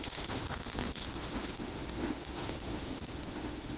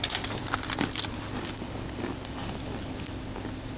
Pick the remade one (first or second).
first